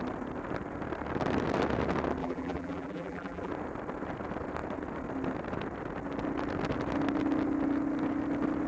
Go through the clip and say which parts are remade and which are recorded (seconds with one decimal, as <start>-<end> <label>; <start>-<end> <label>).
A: 0.0-2.2 recorded; 2.2-3.5 remade; 3.5-8.7 recorded